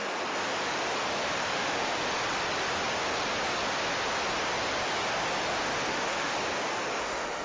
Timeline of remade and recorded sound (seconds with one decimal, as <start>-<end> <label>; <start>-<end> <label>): 0.0-1.3 recorded; 1.3-2.0 remade; 2.0-5.9 recorded; 5.9-6.4 remade; 6.4-7.0 recorded; 7.0-7.4 remade